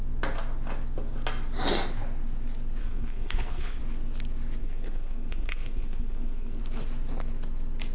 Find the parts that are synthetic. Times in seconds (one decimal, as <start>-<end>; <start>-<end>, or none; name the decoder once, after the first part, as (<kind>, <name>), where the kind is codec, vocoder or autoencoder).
2.8-3.8 (codec, SNAC); 4.6-6.6